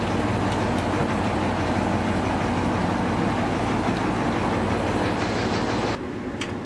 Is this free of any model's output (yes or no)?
yes